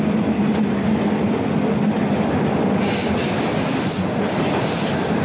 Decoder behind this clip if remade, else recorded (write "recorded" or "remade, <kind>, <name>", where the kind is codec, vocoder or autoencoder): recorded